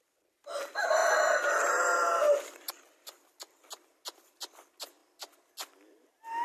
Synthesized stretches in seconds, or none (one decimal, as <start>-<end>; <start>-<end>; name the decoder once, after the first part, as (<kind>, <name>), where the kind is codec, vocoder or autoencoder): none